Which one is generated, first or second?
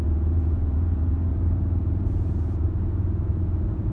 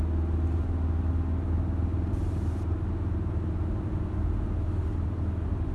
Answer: first